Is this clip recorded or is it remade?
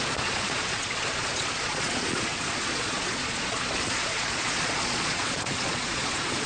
remade